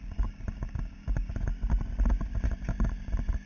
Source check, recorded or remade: recorded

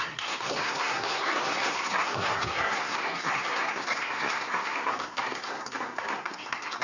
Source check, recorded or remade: remade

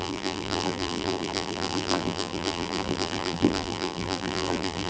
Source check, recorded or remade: remade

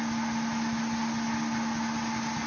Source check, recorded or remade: recorded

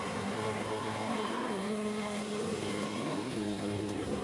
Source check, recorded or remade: remade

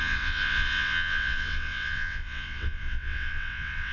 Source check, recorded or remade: remade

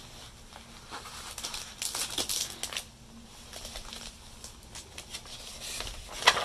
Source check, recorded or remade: recorded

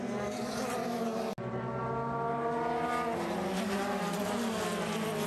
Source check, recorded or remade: recorded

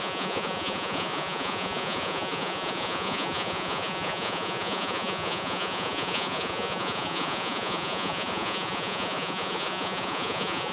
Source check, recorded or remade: remade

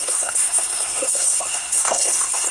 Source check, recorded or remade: remade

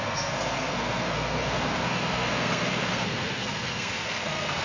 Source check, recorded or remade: remade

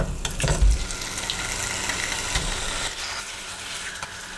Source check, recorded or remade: recorded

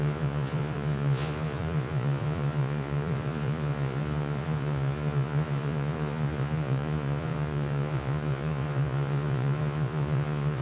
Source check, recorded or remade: remade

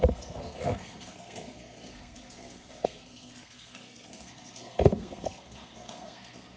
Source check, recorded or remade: remade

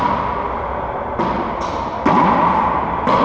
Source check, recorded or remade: recorded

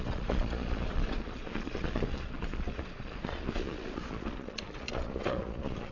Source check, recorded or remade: remade